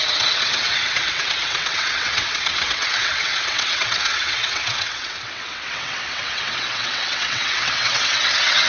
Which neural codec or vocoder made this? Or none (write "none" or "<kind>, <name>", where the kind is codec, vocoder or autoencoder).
vocoder, WaveNeXt